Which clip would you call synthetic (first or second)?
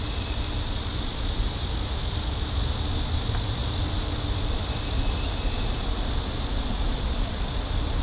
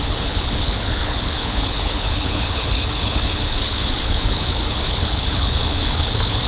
second